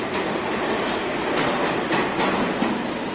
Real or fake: real